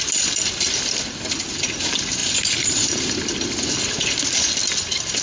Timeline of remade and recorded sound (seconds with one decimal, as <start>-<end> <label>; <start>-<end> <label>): 0.0-5.2 recorded